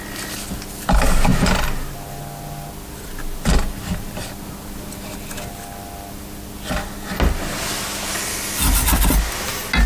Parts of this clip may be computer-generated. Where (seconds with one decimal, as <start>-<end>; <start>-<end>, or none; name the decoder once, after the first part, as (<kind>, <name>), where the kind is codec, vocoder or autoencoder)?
none